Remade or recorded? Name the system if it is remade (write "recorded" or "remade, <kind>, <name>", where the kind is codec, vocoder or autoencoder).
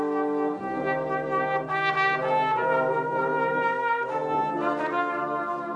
recorded